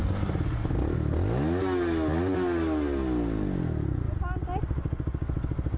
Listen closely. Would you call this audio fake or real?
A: real